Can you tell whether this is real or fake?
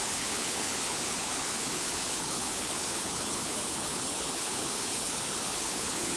fake